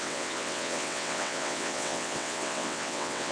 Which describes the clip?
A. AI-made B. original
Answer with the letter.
A